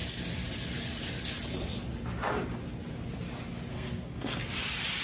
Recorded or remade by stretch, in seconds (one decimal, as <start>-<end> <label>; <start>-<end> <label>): 0.0-3.7 recorded; 3.7-4.4 remade; 4.4-5.0 recorded